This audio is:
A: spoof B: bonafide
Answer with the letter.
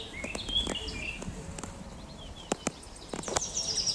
B